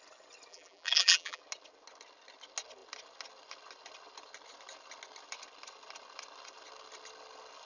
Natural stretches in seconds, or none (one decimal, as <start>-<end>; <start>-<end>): 0.0-0.5; 1.4-7.7